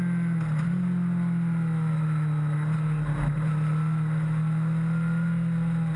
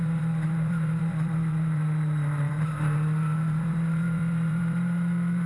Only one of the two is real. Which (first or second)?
first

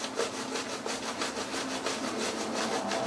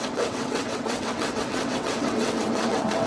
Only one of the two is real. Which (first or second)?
first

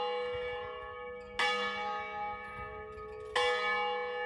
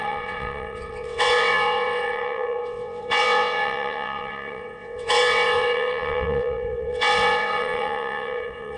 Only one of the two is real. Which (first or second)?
first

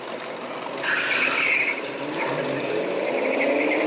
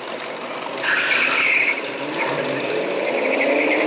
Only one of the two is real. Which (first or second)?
first